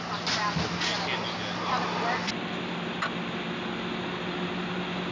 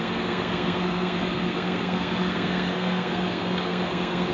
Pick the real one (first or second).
first